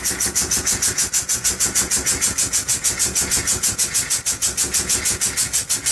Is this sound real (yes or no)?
no